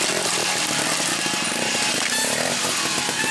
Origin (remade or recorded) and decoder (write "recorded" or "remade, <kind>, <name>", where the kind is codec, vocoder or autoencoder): recorded